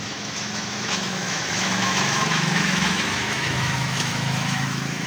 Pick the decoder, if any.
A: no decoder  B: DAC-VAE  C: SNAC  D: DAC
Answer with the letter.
B